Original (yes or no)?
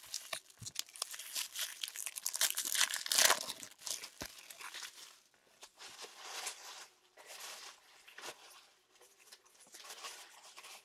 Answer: yes